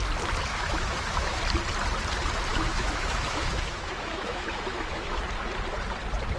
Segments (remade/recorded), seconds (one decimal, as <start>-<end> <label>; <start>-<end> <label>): 0.0-0.5 recorded; 0.5-1.4 remade; 1.4-2.5 recorded; 2.5-5.2 remade; 5.2-6.4 recorded